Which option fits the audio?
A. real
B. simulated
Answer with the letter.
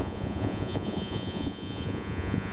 B